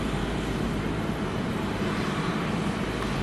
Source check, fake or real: fake